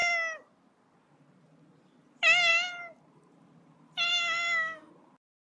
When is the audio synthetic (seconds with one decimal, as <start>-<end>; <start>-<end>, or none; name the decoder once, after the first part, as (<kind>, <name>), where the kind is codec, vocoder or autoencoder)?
4.1-4.9 (autoencoder, DAC-VAE)